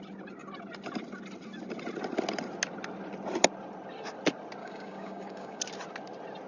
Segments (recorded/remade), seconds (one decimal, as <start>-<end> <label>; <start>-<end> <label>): 0.0-4.6 recorded; 4.6-5.6 remade; 5.6-6.5 recorded